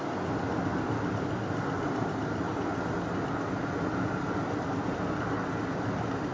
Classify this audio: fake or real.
real